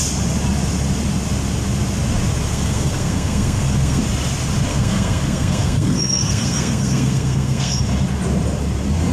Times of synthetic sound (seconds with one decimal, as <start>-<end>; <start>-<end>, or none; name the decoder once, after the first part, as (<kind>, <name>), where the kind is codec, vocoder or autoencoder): 2.5-4.0 (codec, SNAC); 4.7-7.8

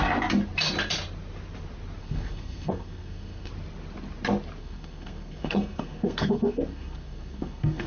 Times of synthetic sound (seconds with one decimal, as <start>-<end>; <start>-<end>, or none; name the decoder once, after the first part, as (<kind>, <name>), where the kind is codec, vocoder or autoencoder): 2.0-3.5 (codec, SNAC); 4.6-7.9

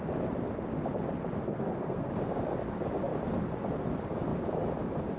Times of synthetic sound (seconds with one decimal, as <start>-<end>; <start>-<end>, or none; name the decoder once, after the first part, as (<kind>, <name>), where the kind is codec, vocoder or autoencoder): 1.5-2.1 (codec, SNAC)

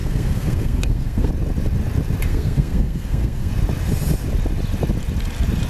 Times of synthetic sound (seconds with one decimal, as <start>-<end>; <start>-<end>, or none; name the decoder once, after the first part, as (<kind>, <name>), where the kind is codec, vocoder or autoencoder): 0.0-1.3 (codec, SNAC); 2.3-3.5

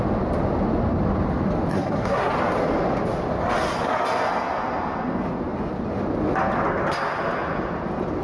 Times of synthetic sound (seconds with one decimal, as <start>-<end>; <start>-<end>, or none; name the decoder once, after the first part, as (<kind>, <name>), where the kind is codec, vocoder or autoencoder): 1.7-2.3 (codec, SNAC)

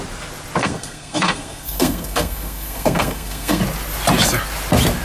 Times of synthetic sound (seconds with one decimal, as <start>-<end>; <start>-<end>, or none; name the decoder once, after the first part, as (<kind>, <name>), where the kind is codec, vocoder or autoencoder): 0.6-3.6 (codec, SNAC)